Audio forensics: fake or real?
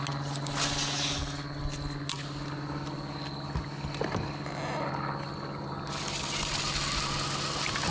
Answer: real